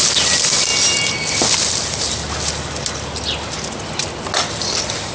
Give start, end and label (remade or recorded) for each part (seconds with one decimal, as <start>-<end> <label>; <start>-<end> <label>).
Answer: 0.0-5.1 recorded